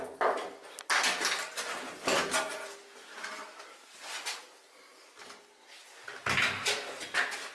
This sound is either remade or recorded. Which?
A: recorded